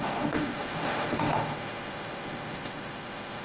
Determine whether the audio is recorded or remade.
remade